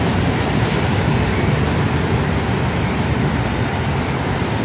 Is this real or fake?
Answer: real